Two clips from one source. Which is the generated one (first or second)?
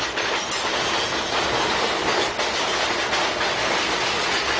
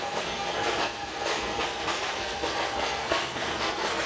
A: second